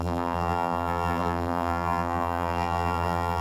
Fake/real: fake